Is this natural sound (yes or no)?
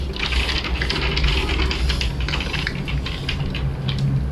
yes